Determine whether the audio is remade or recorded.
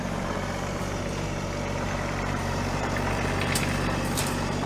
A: remade